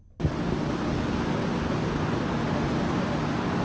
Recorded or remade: recorded